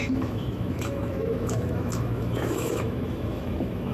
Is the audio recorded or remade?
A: remade